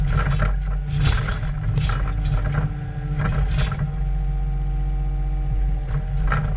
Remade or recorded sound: recorded